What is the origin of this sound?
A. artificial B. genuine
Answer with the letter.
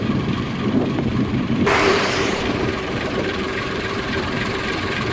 A